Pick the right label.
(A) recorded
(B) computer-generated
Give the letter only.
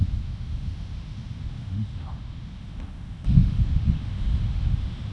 B